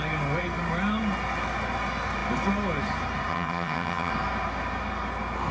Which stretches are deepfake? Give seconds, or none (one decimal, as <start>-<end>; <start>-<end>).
3.3-4.1